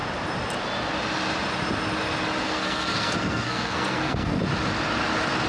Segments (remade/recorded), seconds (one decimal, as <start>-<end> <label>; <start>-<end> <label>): 0.0-2.4 recorded; 2.4-4.4 remade; 4.4-5.5 recorded